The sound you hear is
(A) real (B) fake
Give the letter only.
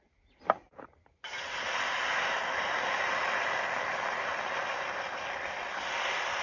A